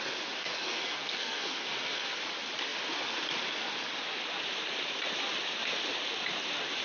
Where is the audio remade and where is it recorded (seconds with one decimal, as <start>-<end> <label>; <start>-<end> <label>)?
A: 0.0-0.4 recorded; 0.4-2.2 remade; 2.2-6.8 recorded

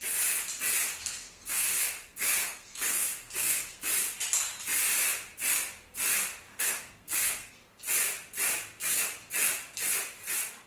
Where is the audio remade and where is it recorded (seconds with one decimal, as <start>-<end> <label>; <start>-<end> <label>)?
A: 0.0-1.0 recorded; 1.0-3.8 remade; 3.8-6.5 recorded; 6.5-7.8 remade; 7.8-10.7 recorded

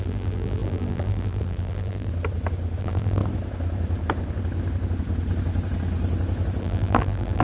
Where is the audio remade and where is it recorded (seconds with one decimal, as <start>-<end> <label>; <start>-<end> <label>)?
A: 0.0-2.1 remade; 2.1-2.8 recorded; 2.8-3.2 remade; 3.2-6.6 recorded; 6.6-7.4 remade

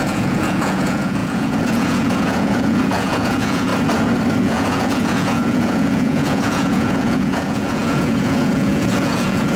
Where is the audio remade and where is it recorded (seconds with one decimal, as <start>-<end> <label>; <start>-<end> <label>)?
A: 0.0-3.7 remade; 3.7-4.4 recorded; 4.4-9.6 remade